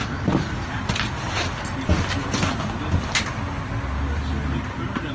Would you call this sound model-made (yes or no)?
no